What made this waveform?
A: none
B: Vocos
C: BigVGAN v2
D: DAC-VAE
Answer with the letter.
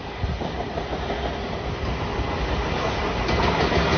A